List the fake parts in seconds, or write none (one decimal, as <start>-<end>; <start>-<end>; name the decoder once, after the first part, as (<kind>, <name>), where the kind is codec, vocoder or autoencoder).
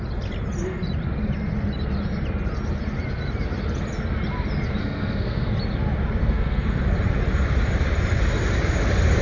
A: 4.8-5.5 (codec, SNAC); 6.2-6.8